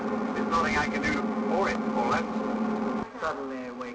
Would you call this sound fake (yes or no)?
no